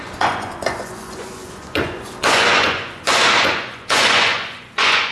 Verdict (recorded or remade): remade